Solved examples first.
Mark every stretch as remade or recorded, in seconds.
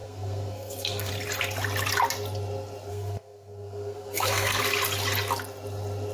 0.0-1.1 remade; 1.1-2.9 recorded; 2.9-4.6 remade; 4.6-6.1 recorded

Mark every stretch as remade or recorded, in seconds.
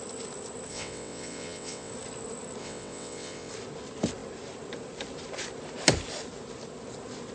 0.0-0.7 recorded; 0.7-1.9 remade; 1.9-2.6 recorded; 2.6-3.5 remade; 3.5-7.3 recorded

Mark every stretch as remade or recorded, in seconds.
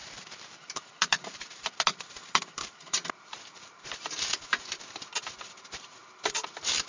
0.0-4.1 remade; 4.1-5.1 recorded; 5.1-5.9 remade; 5.9-6.9 recorded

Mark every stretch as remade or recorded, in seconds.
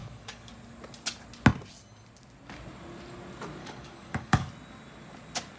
0.0-0.5 remade; 0.5-3.6 recorded; 3.6-4.5 remade; 4.5-5.6 recorded